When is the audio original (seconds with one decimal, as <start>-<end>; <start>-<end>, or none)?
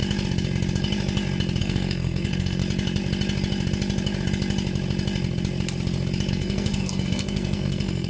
0.0-1.6; 2.6-6.3